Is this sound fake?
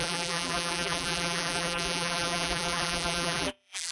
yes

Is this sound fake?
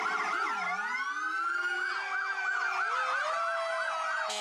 no